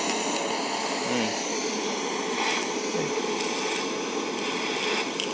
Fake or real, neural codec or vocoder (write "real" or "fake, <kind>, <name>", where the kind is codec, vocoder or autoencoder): real